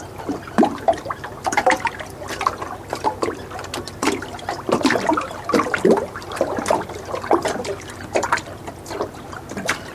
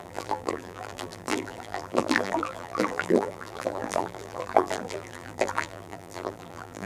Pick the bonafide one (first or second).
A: first